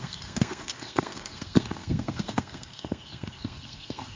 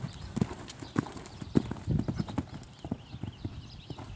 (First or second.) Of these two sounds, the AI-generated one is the first